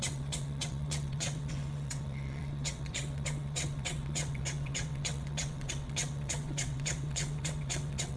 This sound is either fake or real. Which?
fake